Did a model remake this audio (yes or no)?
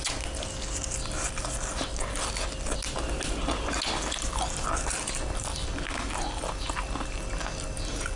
no